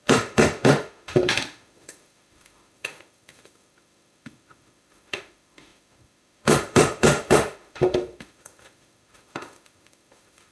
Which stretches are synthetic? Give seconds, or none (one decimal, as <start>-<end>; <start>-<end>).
0.0-10.5